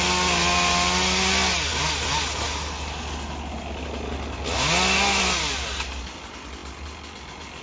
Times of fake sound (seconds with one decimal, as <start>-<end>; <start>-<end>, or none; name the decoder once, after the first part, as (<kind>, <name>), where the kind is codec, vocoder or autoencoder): none